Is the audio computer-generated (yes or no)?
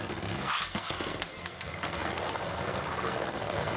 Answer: yes